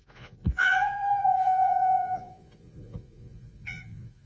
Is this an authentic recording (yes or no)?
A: no